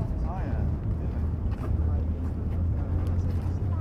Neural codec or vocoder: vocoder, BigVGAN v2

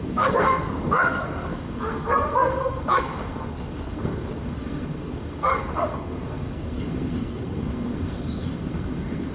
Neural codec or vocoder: codec, SNAC